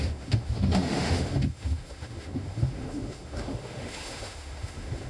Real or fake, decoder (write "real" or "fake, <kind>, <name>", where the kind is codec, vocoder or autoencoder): fake, autoencoder, DAC-VAE